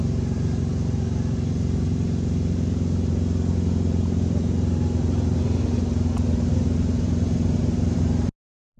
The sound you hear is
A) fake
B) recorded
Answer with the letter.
B